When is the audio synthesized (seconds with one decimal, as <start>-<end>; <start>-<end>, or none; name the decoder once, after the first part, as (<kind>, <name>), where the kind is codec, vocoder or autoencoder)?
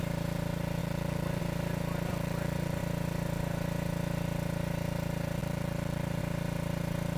0.8-1.4 (vocoder, BigVGAN v2); 2.1-2.8; 5.4-6.2